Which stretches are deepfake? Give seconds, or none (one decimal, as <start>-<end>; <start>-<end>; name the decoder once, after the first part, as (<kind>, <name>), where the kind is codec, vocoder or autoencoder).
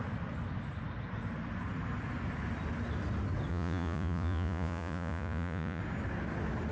3.5-5.8 (vocoder, Vocos)